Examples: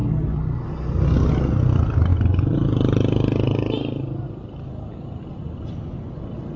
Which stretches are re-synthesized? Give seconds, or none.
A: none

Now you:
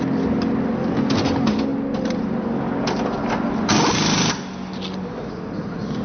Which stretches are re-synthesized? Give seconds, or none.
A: none

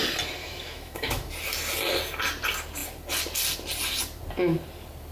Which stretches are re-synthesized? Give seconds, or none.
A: 0.4-1.3 (autoencoder, DAC-VAE)